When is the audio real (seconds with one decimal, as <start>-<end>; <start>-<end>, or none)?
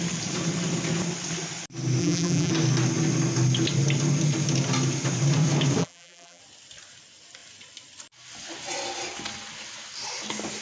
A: 0.0-2.0; 2.5-5.8; 6.4-10.6